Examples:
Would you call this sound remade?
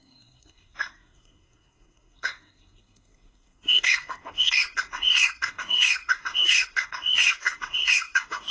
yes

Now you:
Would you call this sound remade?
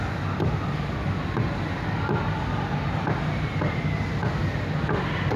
yes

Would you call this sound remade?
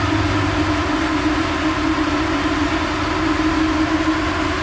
no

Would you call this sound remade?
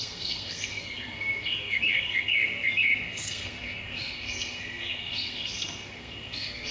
yes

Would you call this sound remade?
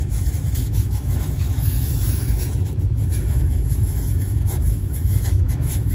yes